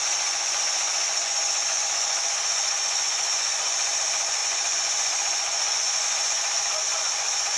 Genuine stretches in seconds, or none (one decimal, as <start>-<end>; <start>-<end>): none